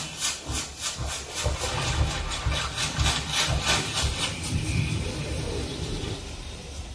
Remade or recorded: remade